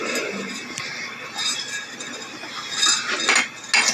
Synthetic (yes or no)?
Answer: no